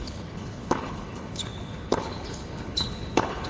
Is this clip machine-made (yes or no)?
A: yes